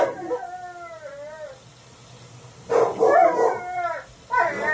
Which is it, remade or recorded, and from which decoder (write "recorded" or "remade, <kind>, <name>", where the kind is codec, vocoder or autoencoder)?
recorded